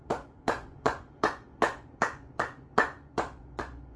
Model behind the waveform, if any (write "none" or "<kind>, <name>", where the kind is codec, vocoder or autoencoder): vocoder, Vocos